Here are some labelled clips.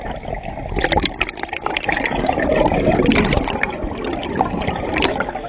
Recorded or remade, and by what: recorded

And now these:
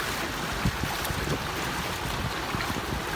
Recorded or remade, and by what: recorded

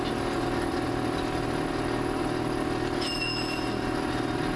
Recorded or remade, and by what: recorded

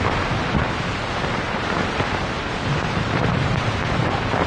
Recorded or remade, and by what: remade, vocoder, BigVGAN v2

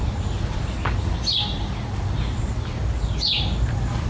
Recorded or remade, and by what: recorded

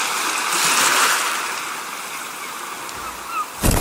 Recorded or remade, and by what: recorded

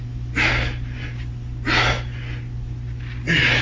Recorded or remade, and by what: recorded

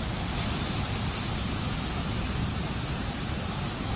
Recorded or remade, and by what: recorded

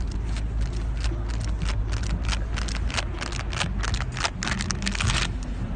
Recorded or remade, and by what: recorded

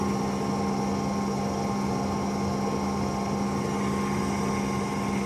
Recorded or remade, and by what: recorded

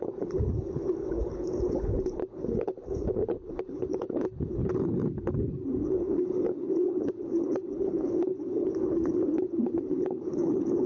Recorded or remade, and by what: remade, codec, HILCodec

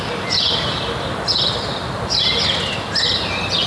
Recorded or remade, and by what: recorded